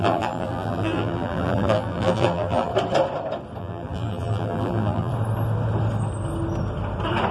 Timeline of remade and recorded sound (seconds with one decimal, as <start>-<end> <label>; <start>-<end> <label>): 0.0-2.7 remade; 2.7-3.6 recorded; 3.6-5.1 remade; 5.1-7.3 recorded